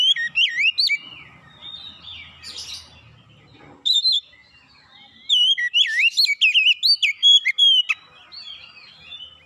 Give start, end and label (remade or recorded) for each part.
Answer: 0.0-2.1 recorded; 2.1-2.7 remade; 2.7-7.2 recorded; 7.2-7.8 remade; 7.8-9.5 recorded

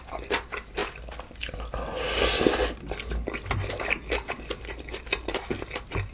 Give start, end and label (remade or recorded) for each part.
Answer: 0.0-6.1 recorded

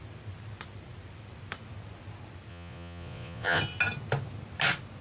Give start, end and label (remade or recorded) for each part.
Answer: 0.0-2.5 recorded; 2.5-3.6 remade; 3.6-5.0 recorded

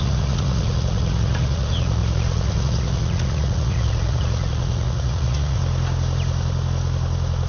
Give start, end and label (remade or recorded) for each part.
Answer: 0.0-5.6 remade; 5.6-7.5 recorded

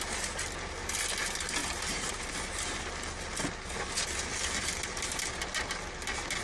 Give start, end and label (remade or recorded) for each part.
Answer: 0.0-1.6 recorded; 1.6-2.3 remade; 2.3-4.3 recorded; 4.3-5.4 remade; 5.4-6.4 recorded